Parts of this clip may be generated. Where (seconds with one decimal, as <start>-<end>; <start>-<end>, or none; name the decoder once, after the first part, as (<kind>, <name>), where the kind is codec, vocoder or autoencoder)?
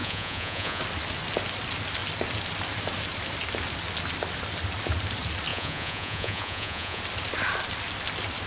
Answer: 0.0-0.8 (vocoder, Vocos); 5.5-7.0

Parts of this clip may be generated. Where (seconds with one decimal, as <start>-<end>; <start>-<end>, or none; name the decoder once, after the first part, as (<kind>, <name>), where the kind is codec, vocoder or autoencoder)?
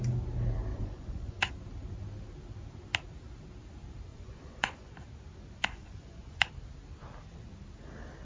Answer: 0.7-1.5 (vocoder, Vocos); 4.1-4.9; 5.6-6.5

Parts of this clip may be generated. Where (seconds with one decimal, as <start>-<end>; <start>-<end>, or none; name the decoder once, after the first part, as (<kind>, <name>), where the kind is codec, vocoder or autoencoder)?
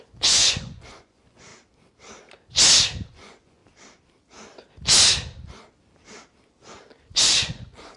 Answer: 0.0-1.5 (vocoder, Vocos); 3.1-3.6; 7.0-8.0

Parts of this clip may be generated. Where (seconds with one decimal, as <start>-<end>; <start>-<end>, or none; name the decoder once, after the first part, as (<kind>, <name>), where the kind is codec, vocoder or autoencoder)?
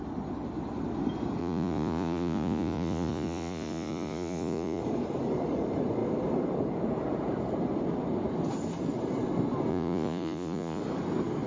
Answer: 1.4-4.8 (vocoder, Vocos); 9.7-10.8